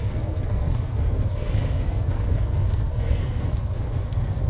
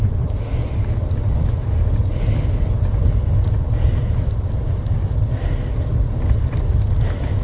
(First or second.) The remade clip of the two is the first